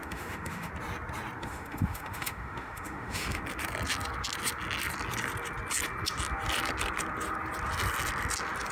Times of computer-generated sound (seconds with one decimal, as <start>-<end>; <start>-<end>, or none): 0.0-0.7; 1.4-3.4

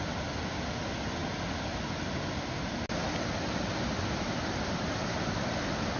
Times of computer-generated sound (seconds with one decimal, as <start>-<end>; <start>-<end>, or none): none

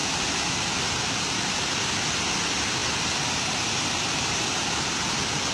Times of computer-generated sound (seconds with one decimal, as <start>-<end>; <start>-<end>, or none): 0.0-0.8; 2.8-5.1

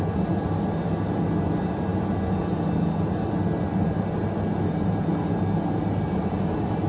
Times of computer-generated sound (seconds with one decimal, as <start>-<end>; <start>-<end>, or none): none

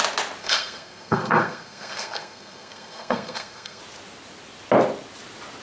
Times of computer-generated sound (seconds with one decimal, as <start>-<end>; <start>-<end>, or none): 0.4-3.8